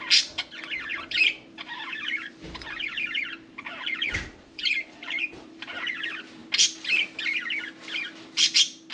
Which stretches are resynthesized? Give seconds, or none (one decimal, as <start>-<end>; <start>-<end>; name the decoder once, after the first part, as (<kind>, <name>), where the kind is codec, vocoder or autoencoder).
0.9-6.0 (vocoder, BigVGAN v2)